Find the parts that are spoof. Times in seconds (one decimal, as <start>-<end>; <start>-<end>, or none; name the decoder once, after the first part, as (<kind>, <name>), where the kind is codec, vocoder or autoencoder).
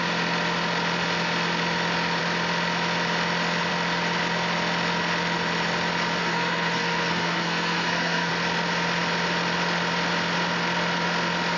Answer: 6.2-8.3 (codec, SNAC)